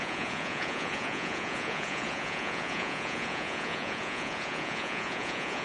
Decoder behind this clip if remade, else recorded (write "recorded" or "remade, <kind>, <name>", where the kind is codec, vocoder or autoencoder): remade, vocoder, Vocos